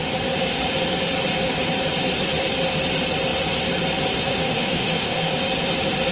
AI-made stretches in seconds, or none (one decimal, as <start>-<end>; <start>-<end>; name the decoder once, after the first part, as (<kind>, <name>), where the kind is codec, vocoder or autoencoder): 4.3-5.3 (autoencoder, DAC-VAE)